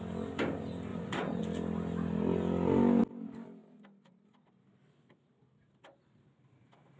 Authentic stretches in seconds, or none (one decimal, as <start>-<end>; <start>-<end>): 0.0-0.9; 1.4-7.0